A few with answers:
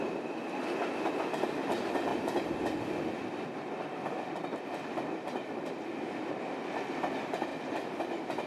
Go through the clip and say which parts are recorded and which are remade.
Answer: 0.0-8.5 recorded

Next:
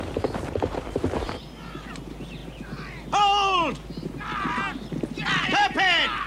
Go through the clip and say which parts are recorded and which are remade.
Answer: 0.0-6.3 recorded

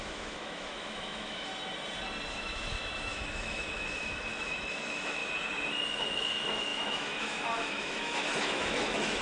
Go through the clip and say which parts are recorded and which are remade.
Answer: 0.0-1.5 remade; 1.5-2.3 recorded; 2.3-5.2 remade; 5.2-5.9 recorded; 5.9-9.2 remade

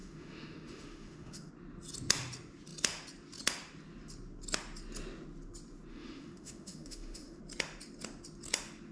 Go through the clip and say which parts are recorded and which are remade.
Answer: 0.0-1.5 remade; 1.5-5.9 recorded; 5.9-7.4 remade; 7.4-8.9 recorded